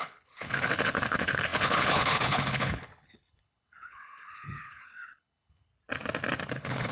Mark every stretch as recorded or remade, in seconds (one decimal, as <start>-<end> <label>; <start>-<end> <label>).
0.0-5.7 remade; 5.7-6.5 recorded; 6.5-6.9 remade